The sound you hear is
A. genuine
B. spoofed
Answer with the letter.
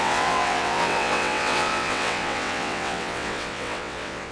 B